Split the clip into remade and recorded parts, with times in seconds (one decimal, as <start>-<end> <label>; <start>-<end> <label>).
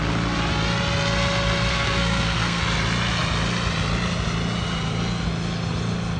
0.0-1.7 recorded; 1.7-2.6 remade; 2.6-6.2 recorded